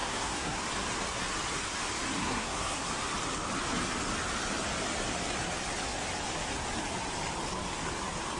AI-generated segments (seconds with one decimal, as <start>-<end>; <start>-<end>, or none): 0.0-0.6; 2.2-3.0